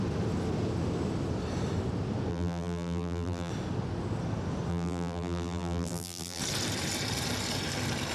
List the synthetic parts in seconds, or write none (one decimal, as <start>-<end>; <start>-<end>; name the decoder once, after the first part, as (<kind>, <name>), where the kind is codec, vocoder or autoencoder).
2.3-3.5 (vocoder, BigVGAN v2); 4.7-6.4